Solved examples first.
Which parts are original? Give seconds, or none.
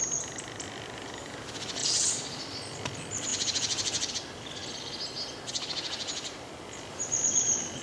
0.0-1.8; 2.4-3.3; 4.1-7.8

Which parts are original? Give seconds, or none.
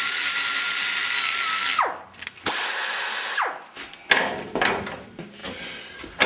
0.0-6.3